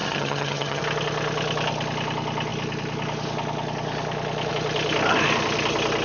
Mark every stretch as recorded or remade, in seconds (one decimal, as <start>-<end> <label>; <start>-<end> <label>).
0.0-0.8 remade; 0.8-6.0 recorded